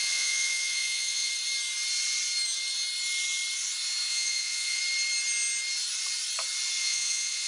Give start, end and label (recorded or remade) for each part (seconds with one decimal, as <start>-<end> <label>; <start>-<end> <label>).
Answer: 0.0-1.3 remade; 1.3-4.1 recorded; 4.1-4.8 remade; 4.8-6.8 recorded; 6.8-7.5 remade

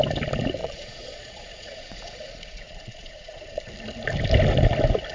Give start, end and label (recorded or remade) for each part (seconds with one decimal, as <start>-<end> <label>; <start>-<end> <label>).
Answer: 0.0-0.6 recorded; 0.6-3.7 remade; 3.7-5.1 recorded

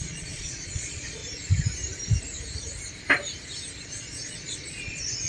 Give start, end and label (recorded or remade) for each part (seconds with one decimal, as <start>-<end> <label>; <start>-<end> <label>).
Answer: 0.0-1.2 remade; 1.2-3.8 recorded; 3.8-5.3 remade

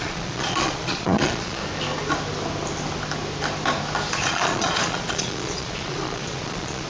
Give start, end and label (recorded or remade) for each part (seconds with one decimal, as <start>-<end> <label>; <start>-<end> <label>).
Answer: 0.0-1.6 remade; 1.6-4.1 recorded; 4.1-6.9 remade

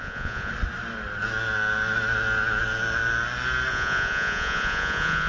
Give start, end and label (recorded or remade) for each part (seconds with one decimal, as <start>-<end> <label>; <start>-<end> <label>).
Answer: 0.0-0.5 remade; 0.5-3.7 recorded; 3.7-5.3 remade

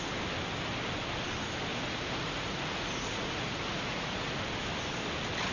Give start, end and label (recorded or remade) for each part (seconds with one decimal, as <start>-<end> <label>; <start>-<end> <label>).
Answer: 0.0-1.7 recorded; 1.7-4.3 remade; 4.3-5.5 recorded